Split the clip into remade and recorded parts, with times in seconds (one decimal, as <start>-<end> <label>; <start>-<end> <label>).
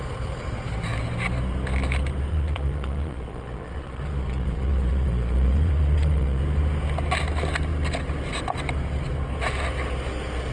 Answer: 0.0-2.3 recorded; 2.3-6.4 remade; 6.4-10.5 recorded